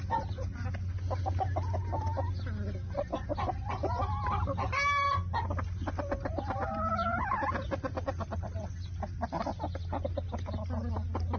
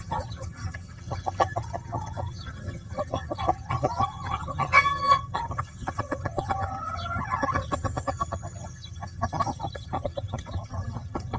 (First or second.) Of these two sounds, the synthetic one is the second